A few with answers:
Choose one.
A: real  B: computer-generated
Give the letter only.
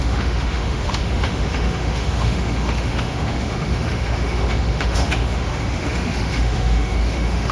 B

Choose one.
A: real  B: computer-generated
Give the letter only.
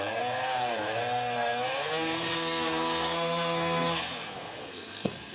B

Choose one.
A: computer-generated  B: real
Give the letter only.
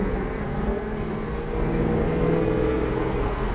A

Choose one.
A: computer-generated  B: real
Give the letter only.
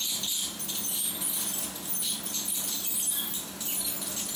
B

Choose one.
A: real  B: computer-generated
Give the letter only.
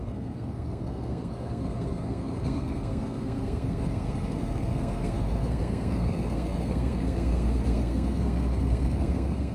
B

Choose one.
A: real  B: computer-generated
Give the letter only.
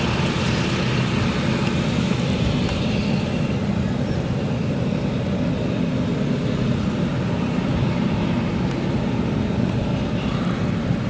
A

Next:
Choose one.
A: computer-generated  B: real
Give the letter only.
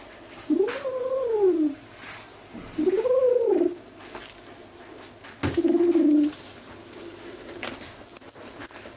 B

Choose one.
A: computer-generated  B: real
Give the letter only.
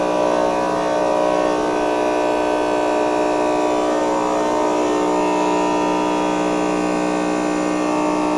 B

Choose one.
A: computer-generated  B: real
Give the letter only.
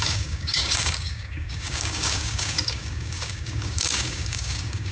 A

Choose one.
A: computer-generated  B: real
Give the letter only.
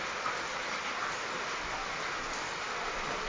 A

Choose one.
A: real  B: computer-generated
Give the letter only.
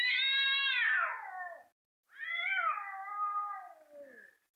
A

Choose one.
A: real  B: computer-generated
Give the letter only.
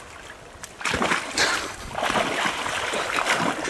A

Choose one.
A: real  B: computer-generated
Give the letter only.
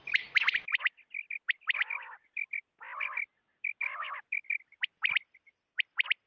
A